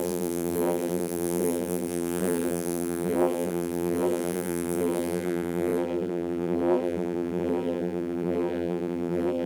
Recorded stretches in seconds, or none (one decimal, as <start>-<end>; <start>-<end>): none